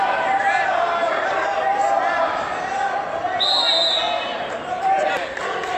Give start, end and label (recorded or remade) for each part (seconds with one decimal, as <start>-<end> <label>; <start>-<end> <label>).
0.0-5.8 recorded